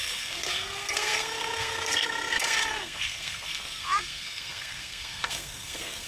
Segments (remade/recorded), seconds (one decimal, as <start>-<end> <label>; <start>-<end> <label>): 0.0-6.1 remade